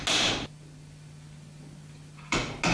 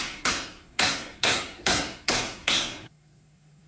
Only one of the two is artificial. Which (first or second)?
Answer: second